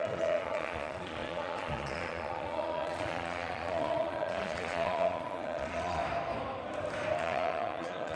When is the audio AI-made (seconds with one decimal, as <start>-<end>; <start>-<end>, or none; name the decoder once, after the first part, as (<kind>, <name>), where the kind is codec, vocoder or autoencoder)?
0.0-6.0 (vocoder, Vocos); 7.2-8.2